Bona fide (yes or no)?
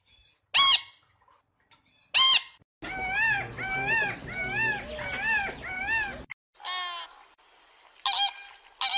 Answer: yes